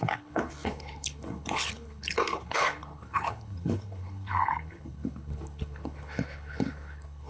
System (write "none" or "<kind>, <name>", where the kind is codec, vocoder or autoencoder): codec, HILCodec